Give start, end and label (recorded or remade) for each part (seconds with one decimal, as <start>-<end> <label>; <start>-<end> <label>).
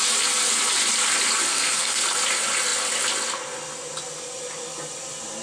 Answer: 0.0-1.5 recorded; 1.5-2.0 remade; 2.0-5.4 recorded